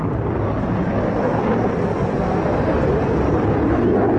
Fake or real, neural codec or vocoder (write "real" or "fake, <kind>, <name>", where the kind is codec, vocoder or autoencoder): real